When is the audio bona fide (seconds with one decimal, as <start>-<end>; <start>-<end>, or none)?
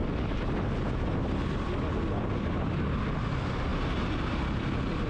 0.0-5.1